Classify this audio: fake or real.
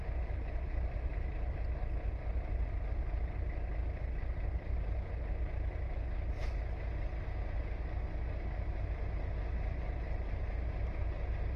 real